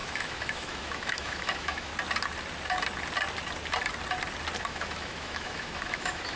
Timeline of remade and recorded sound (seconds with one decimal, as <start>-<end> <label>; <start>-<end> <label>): 0.0-1.9 remade; 1.9-4.6 recorded; 4.6-6.4 remade